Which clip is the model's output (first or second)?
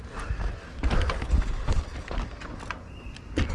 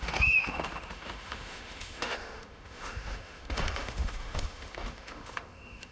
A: second